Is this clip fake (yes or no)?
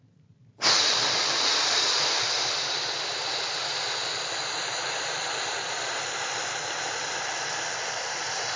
yes